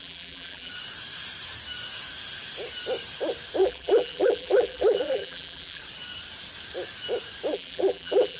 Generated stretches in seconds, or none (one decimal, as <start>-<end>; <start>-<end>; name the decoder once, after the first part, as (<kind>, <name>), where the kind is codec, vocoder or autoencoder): 0.0-0.7 (vocoder, BigVGAN v2); 3.6-5.8; 7.5-8.4